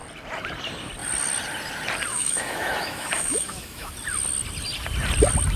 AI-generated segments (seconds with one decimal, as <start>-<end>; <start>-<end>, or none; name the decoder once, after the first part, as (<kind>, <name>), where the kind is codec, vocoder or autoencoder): 2.1-3.9 (autoencoder, DAC-VAE)